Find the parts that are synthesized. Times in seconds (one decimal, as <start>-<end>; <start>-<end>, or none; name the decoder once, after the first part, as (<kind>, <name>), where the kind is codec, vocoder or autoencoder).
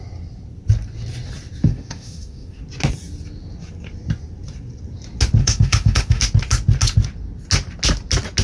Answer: 1.7-2.6 (autoencoder, DAC-VAE); 5.4-6.2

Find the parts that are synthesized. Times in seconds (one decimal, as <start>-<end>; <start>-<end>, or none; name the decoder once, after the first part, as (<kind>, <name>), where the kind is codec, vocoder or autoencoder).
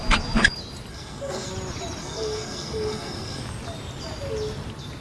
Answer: 0.9-1.5 (codec, SNAC); 2.0-3.4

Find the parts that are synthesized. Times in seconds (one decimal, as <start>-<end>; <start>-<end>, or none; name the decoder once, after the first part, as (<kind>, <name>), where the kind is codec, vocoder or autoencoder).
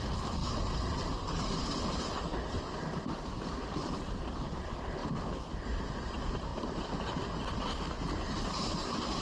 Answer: none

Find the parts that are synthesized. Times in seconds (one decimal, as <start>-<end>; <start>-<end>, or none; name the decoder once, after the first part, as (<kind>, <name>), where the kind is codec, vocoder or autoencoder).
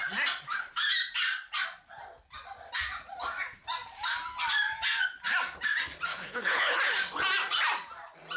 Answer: 6.1-6.8 (codec, HILCodec)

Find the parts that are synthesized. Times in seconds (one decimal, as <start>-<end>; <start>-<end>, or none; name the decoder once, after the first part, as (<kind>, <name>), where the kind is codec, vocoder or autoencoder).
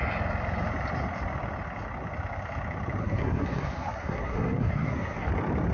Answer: 3.0-5.3 (codec, SNAC)